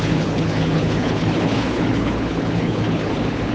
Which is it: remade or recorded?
remade